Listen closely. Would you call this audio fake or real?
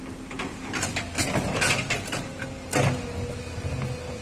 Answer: real